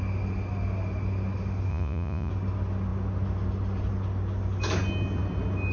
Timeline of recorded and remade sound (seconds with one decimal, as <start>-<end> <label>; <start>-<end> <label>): 0.0-1.7 recorded; 1.7-2.3 remade; 2.3-5.7 recorded